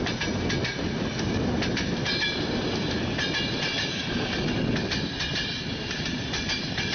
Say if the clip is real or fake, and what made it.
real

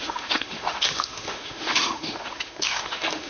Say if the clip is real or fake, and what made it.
fake, autoencoder, DAC-VAE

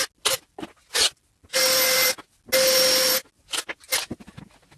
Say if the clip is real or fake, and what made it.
real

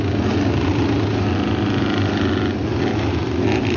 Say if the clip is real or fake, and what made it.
real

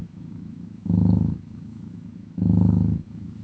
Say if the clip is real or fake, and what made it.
fake, autoencoder, DAC-VAE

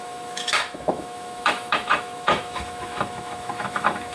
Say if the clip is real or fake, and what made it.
fake, autoencoder, DAC-VAE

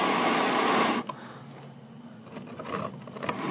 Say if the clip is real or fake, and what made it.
real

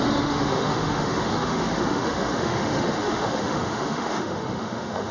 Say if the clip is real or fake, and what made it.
fake, autoencoder, DAC-VAE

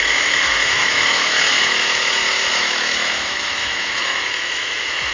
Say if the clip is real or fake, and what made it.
fake, autoencoder, DAC-VAE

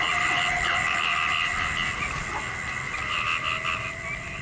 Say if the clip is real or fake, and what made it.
real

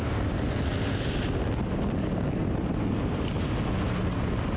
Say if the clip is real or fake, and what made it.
real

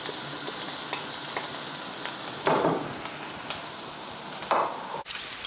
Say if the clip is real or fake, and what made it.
real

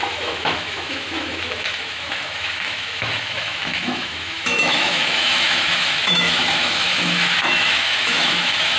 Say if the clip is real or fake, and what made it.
fake, autoencoder, DAC-VAE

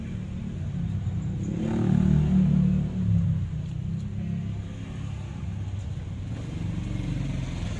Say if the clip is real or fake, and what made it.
real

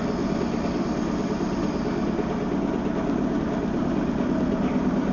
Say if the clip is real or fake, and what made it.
real